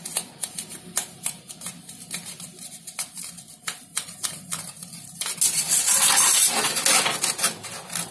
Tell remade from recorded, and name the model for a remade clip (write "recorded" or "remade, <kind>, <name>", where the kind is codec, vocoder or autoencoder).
recorded